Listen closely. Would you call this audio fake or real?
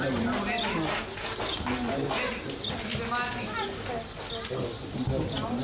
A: real